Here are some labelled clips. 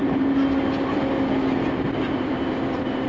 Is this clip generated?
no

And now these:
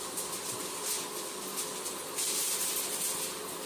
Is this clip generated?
no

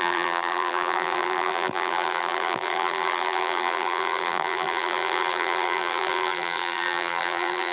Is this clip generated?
yes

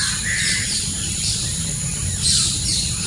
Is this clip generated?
yes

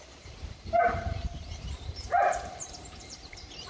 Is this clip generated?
yes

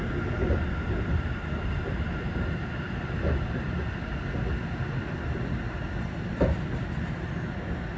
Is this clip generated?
no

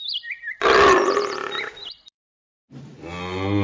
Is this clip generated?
no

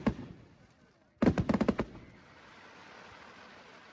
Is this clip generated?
yes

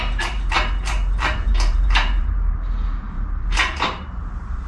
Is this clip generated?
yes